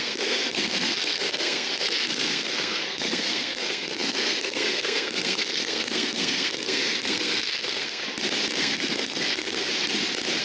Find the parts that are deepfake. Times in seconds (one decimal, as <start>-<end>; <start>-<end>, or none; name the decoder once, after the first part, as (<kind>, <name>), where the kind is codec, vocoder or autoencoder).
0.0-8.0 (codec, SNAC); 8.6-9.7